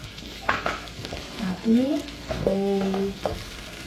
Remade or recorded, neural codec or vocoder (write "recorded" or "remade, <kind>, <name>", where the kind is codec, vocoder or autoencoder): remade, codec, SNAC